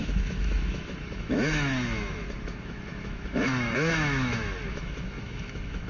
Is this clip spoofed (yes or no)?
yes